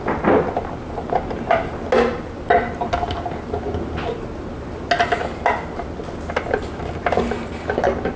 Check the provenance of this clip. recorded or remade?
recorded